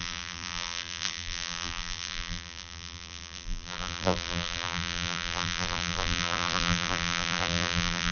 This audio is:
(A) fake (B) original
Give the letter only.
A